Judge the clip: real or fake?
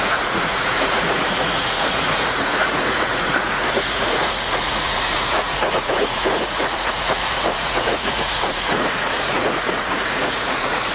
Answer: fake